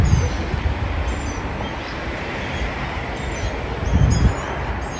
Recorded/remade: recorded